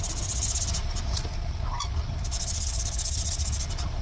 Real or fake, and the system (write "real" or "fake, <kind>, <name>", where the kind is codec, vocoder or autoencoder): real